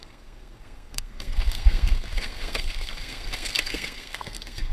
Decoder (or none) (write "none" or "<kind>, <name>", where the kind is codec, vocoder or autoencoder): codec, SNAC